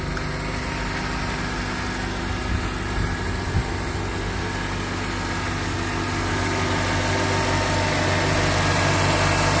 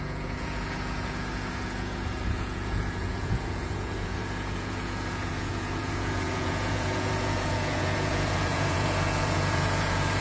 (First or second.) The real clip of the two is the first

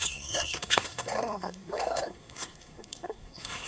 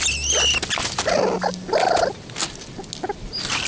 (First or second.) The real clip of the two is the second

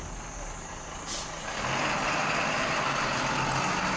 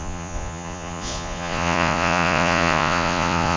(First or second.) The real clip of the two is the first